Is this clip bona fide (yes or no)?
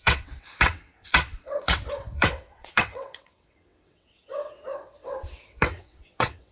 no